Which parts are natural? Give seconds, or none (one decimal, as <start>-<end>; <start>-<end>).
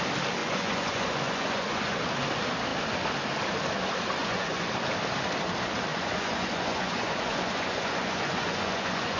0.0-0.4; 2.0-4.2; 4.7-5.9